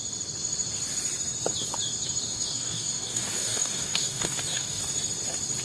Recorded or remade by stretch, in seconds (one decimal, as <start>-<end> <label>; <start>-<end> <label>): 0.0-2.3 recorded; 2.3-4.8 remade; 4.8-5.6 recorded